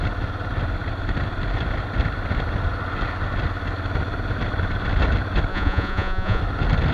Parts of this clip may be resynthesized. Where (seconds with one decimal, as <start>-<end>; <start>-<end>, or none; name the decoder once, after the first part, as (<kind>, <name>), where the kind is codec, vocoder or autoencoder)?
5.5-6.4 (vocoder, Vocos)